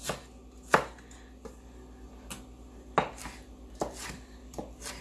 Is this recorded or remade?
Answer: recorded